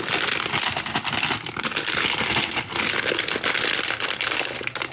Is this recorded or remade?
recorded